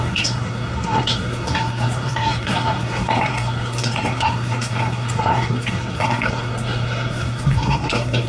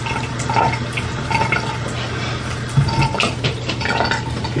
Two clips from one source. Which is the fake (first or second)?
first